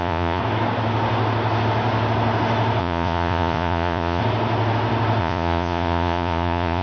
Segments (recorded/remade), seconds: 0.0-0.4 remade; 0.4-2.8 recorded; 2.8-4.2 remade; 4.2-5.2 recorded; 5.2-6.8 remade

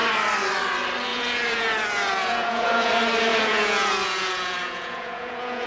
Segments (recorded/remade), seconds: 0.0-1.1 recorded; 1.1-2.9 remade; 2.9-3.3 recorded; 3.3-5.7 remade

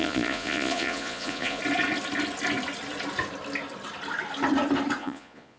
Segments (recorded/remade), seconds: 0.0-1.6 remade; 1.6-5.0 recorded; 5.0-5.6 remade